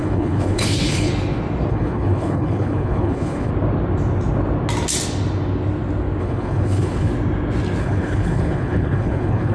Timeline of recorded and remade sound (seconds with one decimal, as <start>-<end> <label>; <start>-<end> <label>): 0.0-1.1 remade; 1.1-1.7 recorded; 1.7-3.5 remade; 3.5-6.2 recorded; 6.2-7.1 remade; 7.1-7.8 recorded; 7.8-9.5 remade

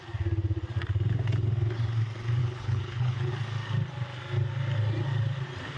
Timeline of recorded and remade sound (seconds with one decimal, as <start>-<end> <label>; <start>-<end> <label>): 0.0-2.4 recorded; 2.4-3.3 remade; 3.3-5.8 recorded

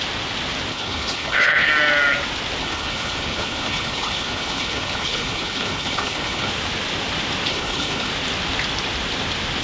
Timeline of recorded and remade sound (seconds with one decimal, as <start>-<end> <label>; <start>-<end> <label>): 0.0-0.7 recorded; 0.7-1.7 remade; 1.7-2.6 recorded; 2.6-6.5 remade; 6.5-7.5 recorded; 7.5-8.1 remade; 8.1-9.6 recorded

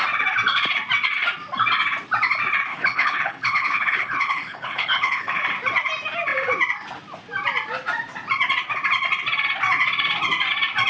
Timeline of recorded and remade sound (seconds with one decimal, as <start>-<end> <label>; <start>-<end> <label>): 0.0-2.7 recorded; 2.7-5.4 remade; 5.4-10.9 recorded

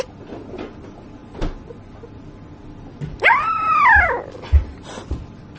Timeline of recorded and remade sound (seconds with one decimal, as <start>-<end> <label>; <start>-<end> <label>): 0.0-5.6 recorded

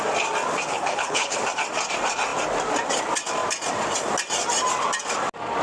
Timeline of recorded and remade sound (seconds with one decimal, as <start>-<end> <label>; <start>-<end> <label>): 0.0-0.7 recorded; 0.7-1.4 remade; 1.4-5.6 recorded

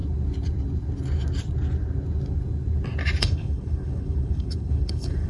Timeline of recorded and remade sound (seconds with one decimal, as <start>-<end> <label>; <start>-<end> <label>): 0.0-3.2 recorded; 3.2-5.3 remade

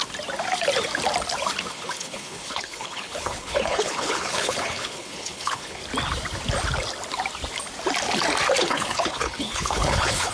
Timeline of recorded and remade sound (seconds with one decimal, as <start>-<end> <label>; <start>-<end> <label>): 0.0-1.7 recorded; 1.7-5.8 remade; 5.8-8.6 recorded; 8.6-10.3 remade